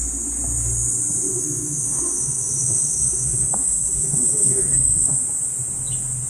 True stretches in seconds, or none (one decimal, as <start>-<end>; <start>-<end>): 0.0-1.3; 5.1-6.3